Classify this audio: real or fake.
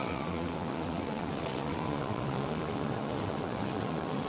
fake